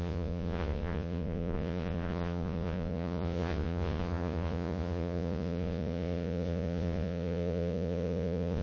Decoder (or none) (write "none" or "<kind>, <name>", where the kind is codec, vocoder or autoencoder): vocoder, Vocos